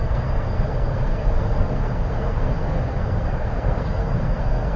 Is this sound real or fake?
fake